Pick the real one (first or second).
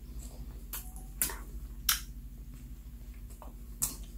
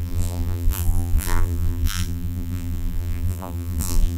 first